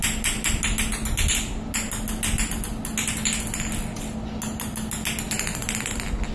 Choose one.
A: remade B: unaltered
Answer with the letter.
B